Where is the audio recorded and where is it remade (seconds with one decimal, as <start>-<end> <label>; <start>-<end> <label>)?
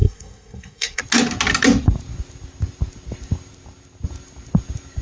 0.0-1.0 remade; 1.0-5.0 recorded